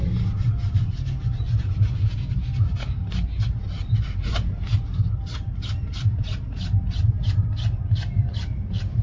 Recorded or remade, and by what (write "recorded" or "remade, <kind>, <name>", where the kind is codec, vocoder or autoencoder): recorded